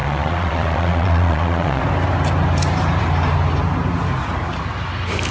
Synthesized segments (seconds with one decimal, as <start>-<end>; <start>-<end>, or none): 0.0-1.8